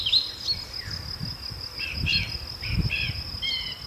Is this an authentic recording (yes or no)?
yes